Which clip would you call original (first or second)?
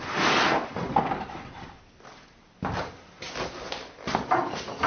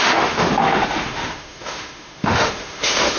first